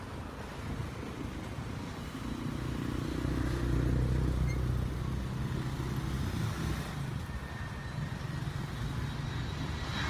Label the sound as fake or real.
real